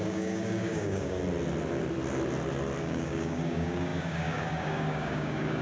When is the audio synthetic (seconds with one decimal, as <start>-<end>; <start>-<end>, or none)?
0.0-1.2; 2.8-5.6